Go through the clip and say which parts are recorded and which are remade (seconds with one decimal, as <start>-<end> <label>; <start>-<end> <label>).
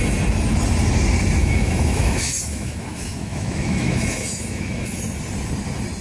0.0-1.4 recorded; 1.4-5.0 remade; 5.0-6.0 recorded